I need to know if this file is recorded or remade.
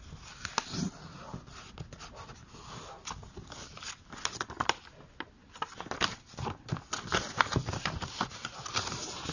recorded